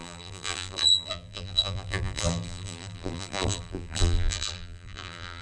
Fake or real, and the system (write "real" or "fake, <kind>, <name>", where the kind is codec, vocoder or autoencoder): fake, vocoder, BigVGAN v2